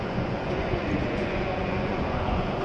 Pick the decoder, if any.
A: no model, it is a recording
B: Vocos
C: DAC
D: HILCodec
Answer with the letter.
B